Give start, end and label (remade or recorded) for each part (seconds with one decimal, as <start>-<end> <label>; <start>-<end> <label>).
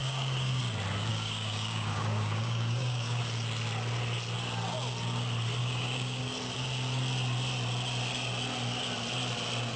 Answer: 0.0-0.6 remade; 0.6-1.1 recorded; 1.1-3.2 remade; 3.2-5.6 recorded; 5.6-6.2 remade; 6.2-9.8 recorded